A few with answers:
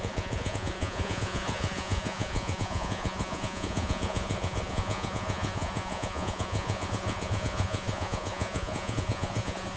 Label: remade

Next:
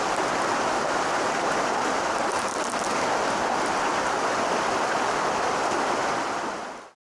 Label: recorded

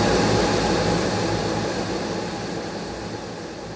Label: recorded